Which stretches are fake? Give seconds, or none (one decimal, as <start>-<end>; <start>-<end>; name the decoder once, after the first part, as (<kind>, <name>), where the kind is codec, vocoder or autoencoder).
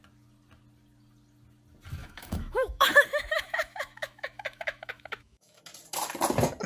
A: 2.0-5.6 (autoencoder, DAC-VAE)